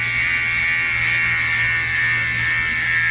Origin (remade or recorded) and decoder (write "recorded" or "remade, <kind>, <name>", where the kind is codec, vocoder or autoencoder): recorded